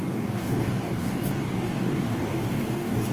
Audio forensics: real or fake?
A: fake